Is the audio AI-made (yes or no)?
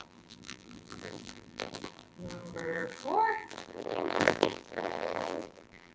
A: yes